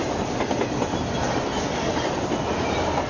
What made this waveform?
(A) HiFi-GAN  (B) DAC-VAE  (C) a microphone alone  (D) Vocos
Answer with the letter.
C